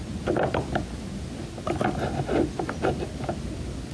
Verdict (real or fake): real